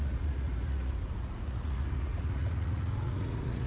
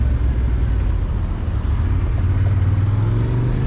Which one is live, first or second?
second